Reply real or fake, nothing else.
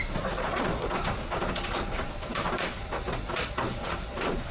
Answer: fake